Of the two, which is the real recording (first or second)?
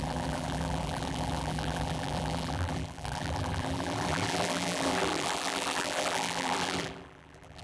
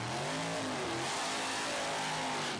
second